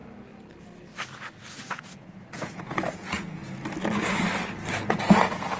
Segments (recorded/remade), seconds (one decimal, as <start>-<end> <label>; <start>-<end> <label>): 0.0-1.5 recorded; 1.5-3.4 remade; 3.4-4.9 recorded; 4.9-5.6 remade